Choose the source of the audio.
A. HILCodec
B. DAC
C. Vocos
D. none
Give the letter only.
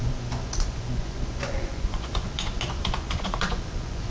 C